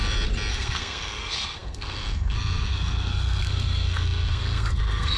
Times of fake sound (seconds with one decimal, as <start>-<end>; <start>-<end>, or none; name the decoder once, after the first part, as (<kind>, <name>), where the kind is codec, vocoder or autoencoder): 0.5-5.2 (codec, SNAC)